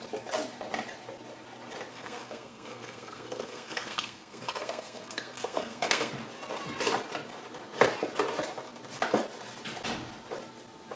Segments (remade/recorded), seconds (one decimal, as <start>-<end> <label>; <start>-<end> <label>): 0.0-1.9 recorded; 1.9-6.1 remade; 6.1-11.0 recorded